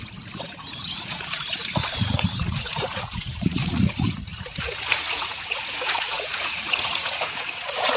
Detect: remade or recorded remade